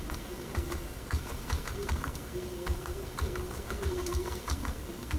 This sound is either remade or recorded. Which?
remade